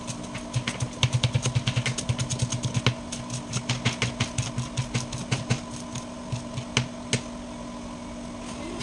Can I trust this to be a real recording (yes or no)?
yes